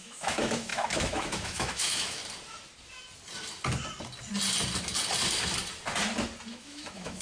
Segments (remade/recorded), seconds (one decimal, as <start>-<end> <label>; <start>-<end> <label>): 0.0-2.2 remade; 2.2-6.5 recorded; 6.5-7.2 remade

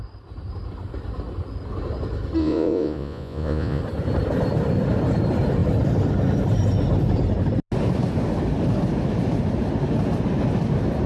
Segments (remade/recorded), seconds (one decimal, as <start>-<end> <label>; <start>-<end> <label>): 0.0-2.4 recorded; 2.4-3.8 remade; 3.8-11.1 recorded

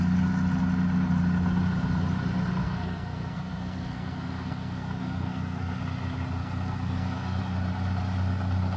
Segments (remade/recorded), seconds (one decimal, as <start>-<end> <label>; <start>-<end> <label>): 0.0-2.6 recorded; 2.6-5.8 remade; 5.8-6.4 recorded; 6.4-7.4 remade; 7.4-8.8 recorded

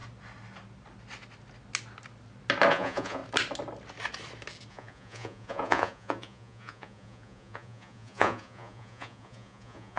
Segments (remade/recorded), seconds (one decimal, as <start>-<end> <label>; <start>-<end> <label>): 0.0-2.7 recorded; 2.7-3.2 remade; 3.2-4.7 recorded; 4.7-10.0 remade